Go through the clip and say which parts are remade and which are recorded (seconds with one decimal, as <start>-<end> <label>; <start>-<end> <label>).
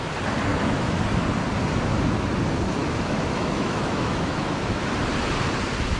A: 0.0-0.5 recorded; 0.5-1.0 remade; 1.0-2.8 recorded; 2.8-4.9 remade; 4.9-6.0 recorded